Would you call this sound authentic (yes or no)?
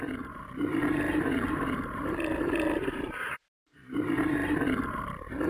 no